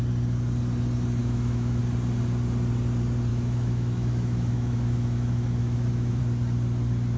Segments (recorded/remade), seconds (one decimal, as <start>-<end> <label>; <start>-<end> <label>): 0.0-1.2 recorded; 1.2-1.8 remade; 1.8-3.3 recorded; 3.3-6.2 remade; 6.2-7.2 recorded